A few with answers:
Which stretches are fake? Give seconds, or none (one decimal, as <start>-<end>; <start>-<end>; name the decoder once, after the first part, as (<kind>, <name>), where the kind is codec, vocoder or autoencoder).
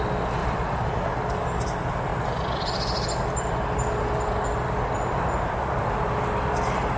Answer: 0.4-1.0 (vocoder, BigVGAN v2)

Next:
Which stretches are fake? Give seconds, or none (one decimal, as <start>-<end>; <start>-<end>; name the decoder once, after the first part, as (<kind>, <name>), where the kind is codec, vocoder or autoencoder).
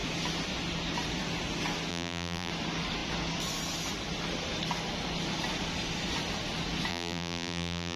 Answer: 1.9-2.5 (vocoder, BigVGAN v2); 6.9-8.0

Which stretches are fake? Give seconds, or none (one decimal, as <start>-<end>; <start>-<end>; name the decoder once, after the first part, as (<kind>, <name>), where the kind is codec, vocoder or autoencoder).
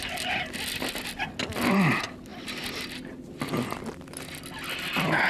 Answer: 2.3-3.2 (vocoder, BigVGAN v2)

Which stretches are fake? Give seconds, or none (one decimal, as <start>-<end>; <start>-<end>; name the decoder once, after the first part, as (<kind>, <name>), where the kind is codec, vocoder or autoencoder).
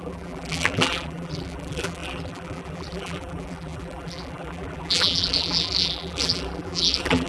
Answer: 0.0-7.3 (vocoder, BigVGAN v2)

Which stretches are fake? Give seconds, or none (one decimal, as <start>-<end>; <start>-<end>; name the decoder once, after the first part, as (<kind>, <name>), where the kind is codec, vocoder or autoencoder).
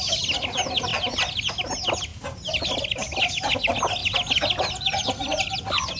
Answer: 2.1-2.7 (vocoder, BigVGAN v2)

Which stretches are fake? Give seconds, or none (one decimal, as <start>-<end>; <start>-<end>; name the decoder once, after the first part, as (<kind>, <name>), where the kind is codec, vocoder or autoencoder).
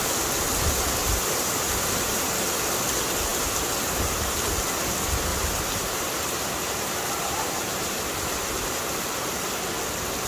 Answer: 1.0-2.6 (vocoder, BigVGAN v2); 3.3-4.5; 5.3-8.8